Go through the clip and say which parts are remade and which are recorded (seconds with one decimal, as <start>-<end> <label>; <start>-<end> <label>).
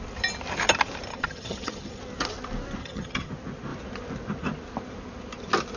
0.0-1.1 recorded; 1.1-2.0 remade; 2.0-2.8 recorded; 2.8-3.3 remade; 3.3-5.8 recorded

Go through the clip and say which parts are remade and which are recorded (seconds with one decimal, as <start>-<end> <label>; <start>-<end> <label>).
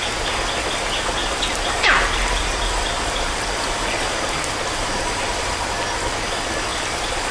0.0-1.2 recorded; 1.2-5.6 remade; 5.6-6.7 recorded; 6.7-7.3 remade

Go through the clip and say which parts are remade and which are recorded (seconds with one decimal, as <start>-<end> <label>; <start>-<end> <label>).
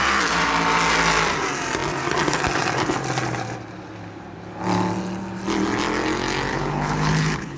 0.0-6.5 recorded; 6.5-7.6 remade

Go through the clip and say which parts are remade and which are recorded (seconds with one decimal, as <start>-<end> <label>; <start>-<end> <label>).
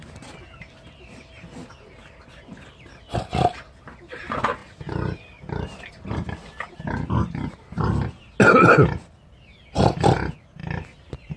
0.0-11.4 recorded